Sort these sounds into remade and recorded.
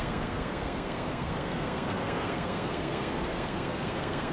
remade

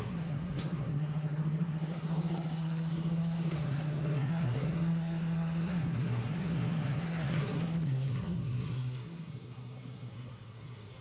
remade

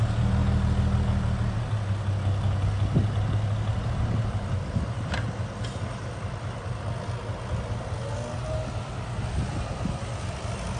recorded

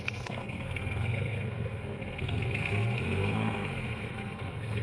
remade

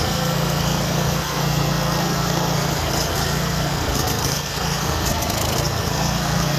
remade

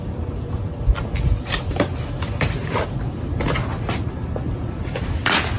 recorded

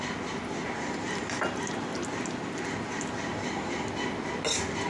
recorded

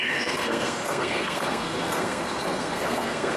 remade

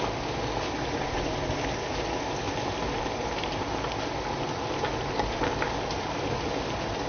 recorded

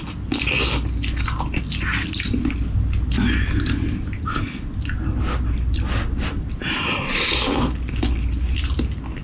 recorded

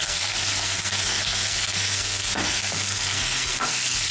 remade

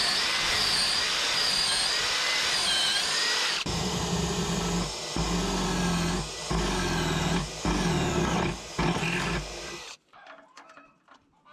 recorded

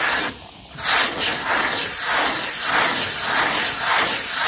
recorded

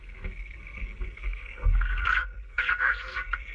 remade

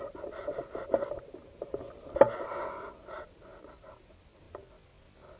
recorded